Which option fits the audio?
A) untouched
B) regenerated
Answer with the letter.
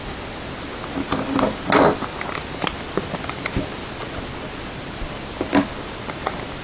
A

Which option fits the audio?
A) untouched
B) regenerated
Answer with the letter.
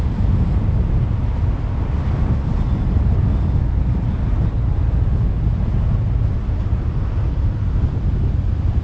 A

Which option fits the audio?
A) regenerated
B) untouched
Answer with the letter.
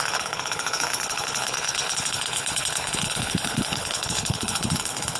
A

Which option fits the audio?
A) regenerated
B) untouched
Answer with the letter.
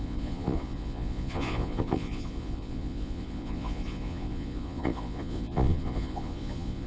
A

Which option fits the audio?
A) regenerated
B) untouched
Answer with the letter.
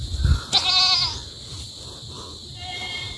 B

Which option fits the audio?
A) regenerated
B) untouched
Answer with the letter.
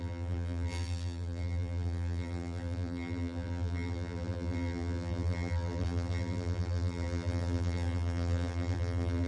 A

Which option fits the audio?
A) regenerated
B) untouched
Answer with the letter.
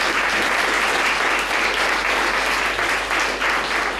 B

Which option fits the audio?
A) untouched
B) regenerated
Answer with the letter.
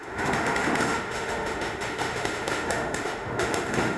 B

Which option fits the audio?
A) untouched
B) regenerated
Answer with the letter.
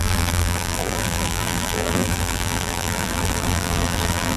B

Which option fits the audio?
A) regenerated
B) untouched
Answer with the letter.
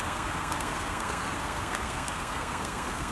A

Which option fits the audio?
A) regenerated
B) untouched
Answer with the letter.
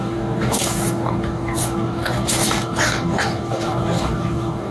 A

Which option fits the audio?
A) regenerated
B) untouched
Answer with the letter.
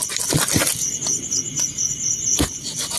B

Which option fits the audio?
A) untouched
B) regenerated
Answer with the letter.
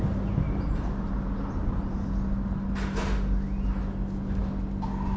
A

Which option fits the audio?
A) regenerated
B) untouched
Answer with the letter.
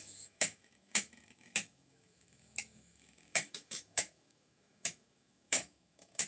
A